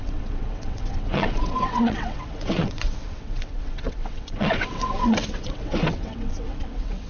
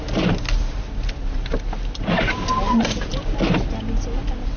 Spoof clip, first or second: first